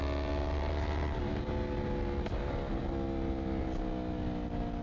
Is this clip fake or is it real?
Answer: real